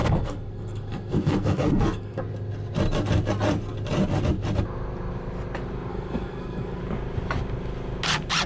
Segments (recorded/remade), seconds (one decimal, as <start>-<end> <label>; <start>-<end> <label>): 0.0-2.2 remade; 2.2-5.9 recorded; 5.9-6.8 remade; 6.8-8.5 recorded